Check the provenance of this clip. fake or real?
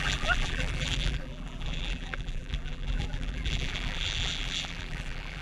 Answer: fake